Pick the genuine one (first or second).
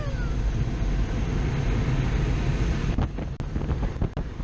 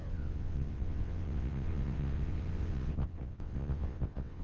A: first